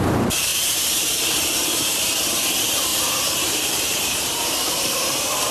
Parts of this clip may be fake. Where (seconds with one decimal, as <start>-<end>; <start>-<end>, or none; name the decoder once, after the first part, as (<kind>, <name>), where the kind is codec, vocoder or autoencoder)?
0.0-5.5 (vocoder, BigVGAN v2)